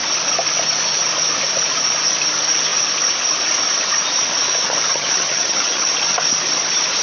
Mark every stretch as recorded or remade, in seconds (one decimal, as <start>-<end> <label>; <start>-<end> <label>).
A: 0.0-4.9 recorded; 4.9-5.9 remade; 5.9-7.0 recorded